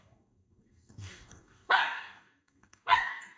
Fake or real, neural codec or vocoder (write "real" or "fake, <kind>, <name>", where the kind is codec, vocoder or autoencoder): fake, codec, DAC